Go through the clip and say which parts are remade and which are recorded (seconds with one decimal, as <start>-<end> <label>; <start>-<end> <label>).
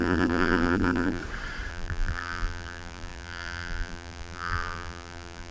0.0-1.2 remade; 1.2-1.7 recorded; 1.7-5.5 remade